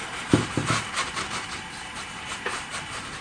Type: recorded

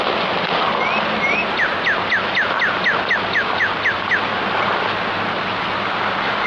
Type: recorded